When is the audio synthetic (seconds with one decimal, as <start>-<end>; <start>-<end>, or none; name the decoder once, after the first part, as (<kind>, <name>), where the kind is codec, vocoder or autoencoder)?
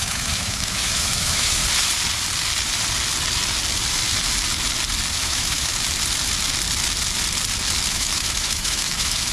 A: 0.0-1.6 (autoencoder, DAC-VAE); 5.1-5.7; 7.9-9.3